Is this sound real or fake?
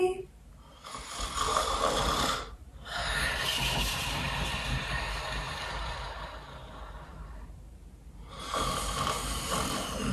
fake